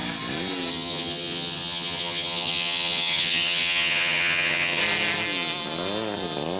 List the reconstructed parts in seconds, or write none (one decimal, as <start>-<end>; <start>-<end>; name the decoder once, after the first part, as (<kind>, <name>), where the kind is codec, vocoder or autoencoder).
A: 0.7-4.8 (vocoder, HiFi-GAN)